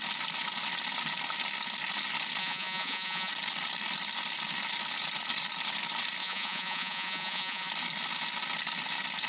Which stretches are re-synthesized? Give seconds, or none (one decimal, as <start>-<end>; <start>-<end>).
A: 2.4-3.3; 6.2-7.7